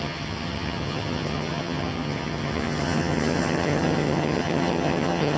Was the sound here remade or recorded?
remade